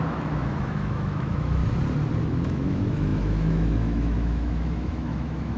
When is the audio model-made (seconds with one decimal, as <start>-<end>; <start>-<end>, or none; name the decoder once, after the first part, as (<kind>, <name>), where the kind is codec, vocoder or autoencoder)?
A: 0.0-1.6 (autoencoder, DAC-VAE); 2.2-5.6